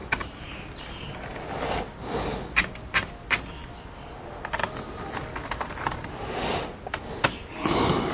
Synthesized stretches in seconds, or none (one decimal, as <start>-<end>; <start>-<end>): none